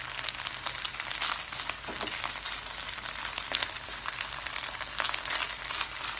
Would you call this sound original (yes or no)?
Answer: no